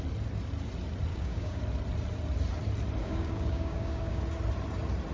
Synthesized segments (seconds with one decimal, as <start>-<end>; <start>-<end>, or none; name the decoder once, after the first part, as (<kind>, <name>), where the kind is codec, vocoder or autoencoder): 1.1-1.6 (codec, DAC); 3.0-4.2